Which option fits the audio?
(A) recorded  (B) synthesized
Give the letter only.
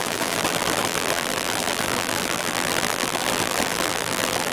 B